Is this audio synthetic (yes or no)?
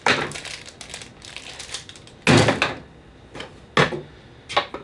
no